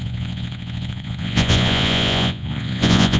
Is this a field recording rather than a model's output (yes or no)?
no